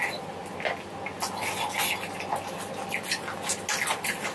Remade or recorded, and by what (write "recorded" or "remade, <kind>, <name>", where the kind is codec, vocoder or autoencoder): recorded